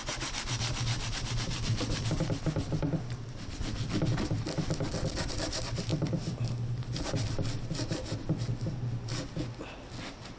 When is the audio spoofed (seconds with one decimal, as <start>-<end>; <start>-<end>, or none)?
none